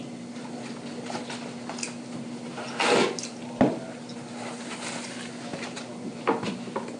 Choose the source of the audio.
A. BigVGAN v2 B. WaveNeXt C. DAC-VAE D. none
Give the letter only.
D